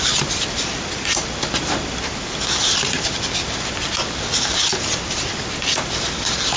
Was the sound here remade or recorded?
recorded